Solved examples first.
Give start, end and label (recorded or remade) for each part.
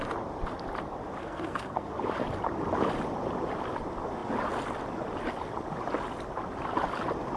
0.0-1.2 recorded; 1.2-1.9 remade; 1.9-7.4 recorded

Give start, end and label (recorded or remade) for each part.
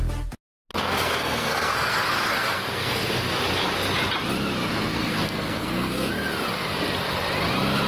0.0-0.7 recorded; 0.7-3.1 remade; 3.1-4.9 recorded; 4.9-6.1 remade; 6.1-7.9 recorded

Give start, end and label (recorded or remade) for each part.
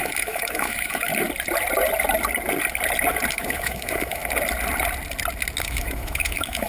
0.0-1.1 remade; 1.1-3.3 recorded; 3.3-4.2 remade; 4.2-5.6 recorded; 5.6-6.7 remade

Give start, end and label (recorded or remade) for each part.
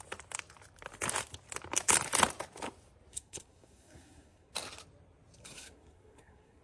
0.0-3.1 recorded; 3.1-4.5 remade; 4.5-5.4 recorded; 5.4-6.6 remade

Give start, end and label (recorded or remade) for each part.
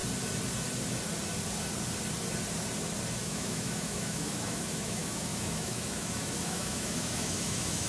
0.0-3.2 recorded; 3.2-7.9 remade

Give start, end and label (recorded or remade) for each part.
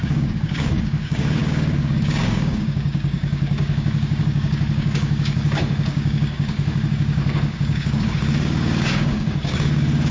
0.0-10.1 remade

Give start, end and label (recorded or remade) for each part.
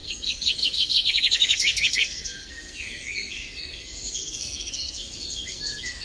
0.0-6.0 remade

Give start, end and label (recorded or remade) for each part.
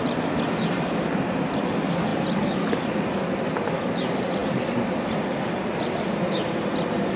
0.0-7.2 recorded